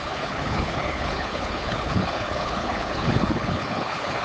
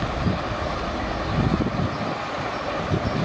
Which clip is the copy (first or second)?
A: first